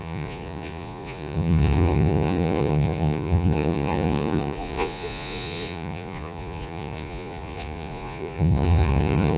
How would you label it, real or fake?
fake